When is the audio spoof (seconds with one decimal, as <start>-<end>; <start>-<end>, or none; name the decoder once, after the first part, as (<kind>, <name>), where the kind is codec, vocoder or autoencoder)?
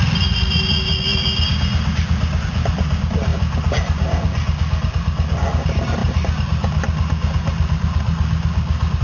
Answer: none